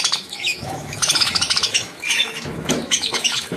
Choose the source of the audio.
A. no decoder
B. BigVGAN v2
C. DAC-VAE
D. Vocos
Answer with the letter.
C